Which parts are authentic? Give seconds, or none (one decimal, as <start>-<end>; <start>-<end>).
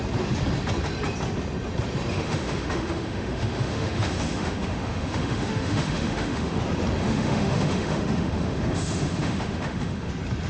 0.0-2.1; 6.6-7.0; 10.1-10.5